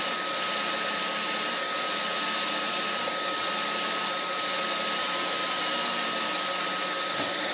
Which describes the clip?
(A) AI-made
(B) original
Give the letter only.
B